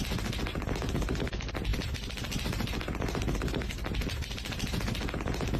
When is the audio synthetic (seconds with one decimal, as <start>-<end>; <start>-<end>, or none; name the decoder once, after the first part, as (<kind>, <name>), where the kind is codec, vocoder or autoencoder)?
0.5-1.2 (vocoder, BigVGAN v2)